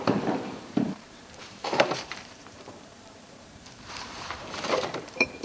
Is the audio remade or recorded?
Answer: remade